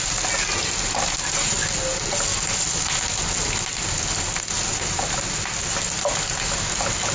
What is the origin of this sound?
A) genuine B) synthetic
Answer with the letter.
A